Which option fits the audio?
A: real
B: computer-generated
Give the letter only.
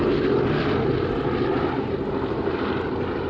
A